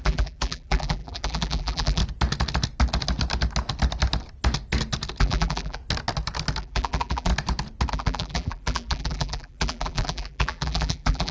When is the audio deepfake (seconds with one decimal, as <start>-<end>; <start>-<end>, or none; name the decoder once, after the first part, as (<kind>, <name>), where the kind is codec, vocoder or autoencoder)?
0.0-2.0 (vocoder, BigVGAN v2); 5.2-5.8; 6.6-7.3; 7.9-11.3